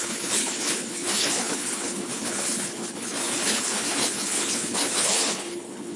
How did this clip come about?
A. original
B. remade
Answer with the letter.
B